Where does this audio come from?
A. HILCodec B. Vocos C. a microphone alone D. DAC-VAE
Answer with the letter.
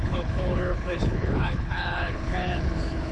A